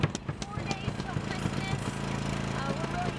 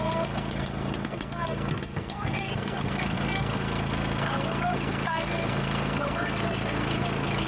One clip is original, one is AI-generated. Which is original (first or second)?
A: first